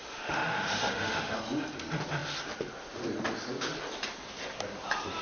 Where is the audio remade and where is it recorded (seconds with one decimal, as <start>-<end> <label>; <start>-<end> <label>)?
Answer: 0.0-1.4 remade; 1.4-5.2 recorded